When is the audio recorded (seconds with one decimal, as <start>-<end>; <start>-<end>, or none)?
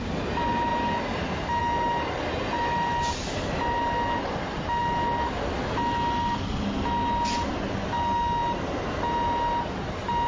0.0-10.3